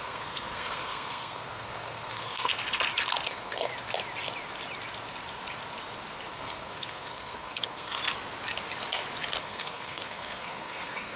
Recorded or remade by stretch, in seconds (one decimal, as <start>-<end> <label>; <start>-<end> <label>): 0.0-2.5 remade; 2.5-3.3 recorded; 3.3-3.7 remade; 3.7-6.3 recorded; 6.3-8.0 remade; 8.0-9.4 recorded; 9.4-11.2 remade